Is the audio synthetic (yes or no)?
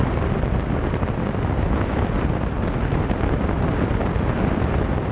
no